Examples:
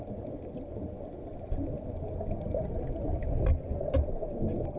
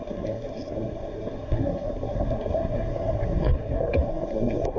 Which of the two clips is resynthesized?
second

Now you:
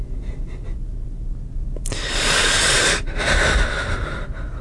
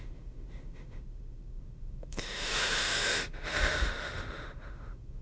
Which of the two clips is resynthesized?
second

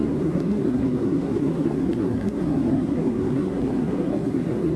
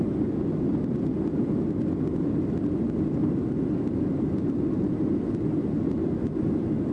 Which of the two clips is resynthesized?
first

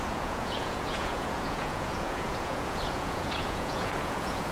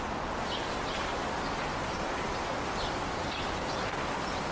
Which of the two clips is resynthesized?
first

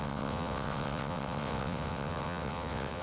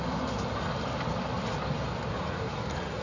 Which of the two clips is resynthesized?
first